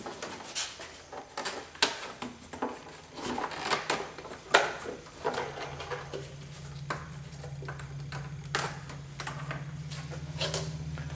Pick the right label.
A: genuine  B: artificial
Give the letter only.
A